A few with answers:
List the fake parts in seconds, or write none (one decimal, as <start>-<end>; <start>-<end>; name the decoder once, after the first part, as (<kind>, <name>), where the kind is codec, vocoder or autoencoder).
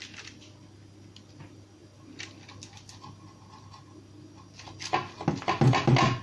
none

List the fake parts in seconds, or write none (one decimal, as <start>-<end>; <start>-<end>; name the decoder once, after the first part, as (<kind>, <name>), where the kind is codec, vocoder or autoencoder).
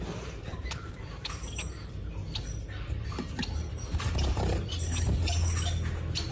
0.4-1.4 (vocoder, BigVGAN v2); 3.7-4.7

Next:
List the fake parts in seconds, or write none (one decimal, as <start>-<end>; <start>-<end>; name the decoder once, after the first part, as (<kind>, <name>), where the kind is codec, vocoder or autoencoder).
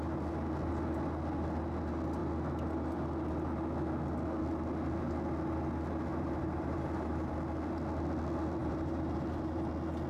6.1-7.3 (vocoder, BigVGAN v2); 8.6-9.6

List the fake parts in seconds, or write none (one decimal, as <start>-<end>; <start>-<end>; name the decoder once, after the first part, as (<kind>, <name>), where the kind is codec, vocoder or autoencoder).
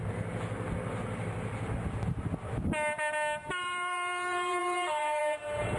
3.5-5.8 (vocoder, BigVGAN v2)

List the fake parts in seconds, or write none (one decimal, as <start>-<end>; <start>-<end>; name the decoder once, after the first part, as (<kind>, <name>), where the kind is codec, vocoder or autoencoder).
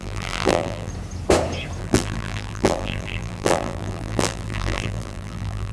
0.0-0.9 (vocoder, BigVGAN v2); 1.8-5.7